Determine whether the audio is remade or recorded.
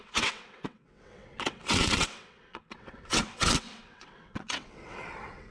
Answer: remade